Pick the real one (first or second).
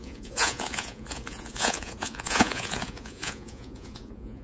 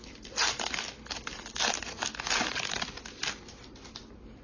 second